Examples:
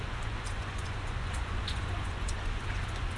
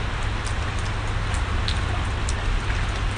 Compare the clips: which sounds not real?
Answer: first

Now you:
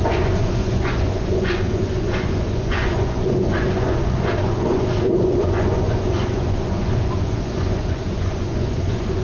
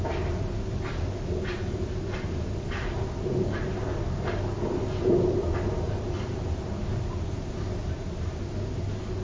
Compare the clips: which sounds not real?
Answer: first